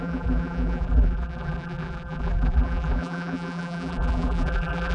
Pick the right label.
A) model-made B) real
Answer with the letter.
A